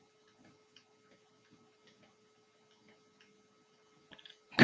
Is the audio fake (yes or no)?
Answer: no